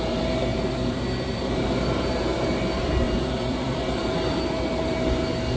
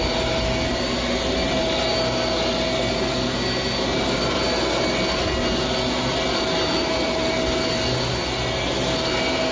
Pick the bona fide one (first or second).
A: second